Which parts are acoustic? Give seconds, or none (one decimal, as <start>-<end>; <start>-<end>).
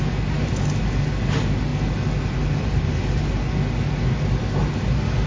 0.0-5.3